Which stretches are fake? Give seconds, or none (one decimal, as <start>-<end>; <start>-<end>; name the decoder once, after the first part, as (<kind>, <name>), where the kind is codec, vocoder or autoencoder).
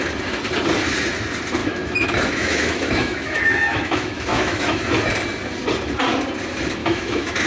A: 1.6-4.8 (autoencoder, DAC-VAE); 6.8-7.5